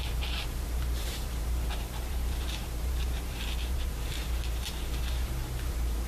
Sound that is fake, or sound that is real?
fake